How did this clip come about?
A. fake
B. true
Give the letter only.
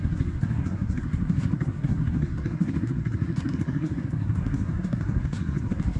A